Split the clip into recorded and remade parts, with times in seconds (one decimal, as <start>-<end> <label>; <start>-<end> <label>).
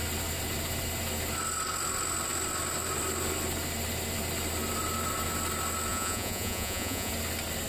0.0-5.9 recorded; 5.9-7.1 remade; 7.1-7.7 recorded